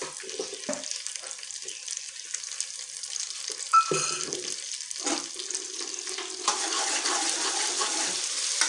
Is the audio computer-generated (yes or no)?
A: no